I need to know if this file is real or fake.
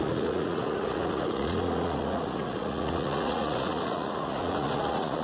fake